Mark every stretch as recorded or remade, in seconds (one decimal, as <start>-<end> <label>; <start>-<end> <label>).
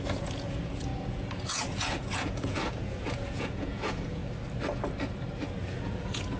0.0-4.2 remade; 4.2-5.8 recorded; 5.8-6.4 remade